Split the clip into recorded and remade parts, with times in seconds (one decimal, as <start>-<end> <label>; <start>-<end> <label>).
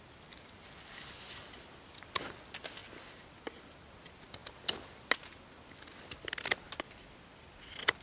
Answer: 0.0-8.0 recorded